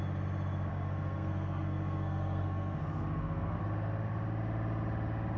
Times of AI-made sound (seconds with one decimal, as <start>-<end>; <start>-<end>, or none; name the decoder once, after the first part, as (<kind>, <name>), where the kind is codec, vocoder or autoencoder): 0.7-3.6 (codec, SNAC)